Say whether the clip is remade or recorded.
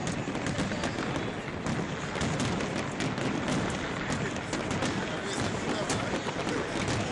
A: recorded